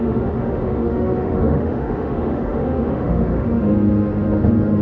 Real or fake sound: fake